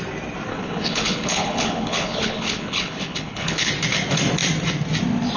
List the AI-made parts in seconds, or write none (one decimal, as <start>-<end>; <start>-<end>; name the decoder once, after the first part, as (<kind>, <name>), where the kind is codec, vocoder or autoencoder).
0.5-3.7 (codec, HILCodec)